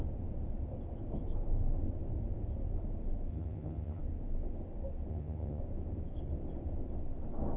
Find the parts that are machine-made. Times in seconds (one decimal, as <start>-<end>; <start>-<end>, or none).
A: 3.3-4.0; 5.1-5.6